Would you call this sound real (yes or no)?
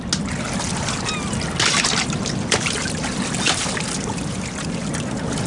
yes